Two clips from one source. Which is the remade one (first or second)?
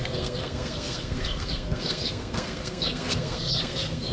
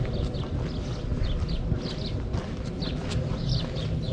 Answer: first